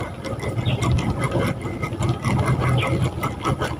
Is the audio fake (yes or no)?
no